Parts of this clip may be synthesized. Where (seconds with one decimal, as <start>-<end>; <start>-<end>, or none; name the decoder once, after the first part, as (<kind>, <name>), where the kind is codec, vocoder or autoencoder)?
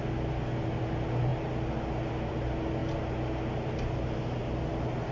none